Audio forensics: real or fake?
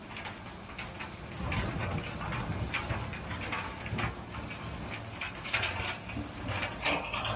real